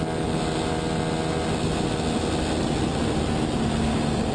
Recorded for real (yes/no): yes